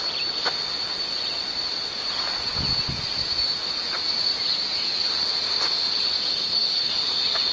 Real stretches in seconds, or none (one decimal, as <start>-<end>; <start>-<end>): 0.0-6.3; 6.9-7.5